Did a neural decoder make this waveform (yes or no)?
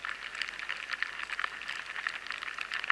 no